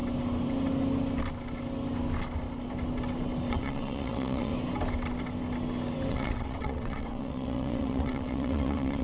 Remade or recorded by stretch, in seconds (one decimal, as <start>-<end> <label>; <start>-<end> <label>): 0.0-3.5 recorded; 3.5-4.5 remade; 4.5-6.1 recorded; 6.1-9.0 remade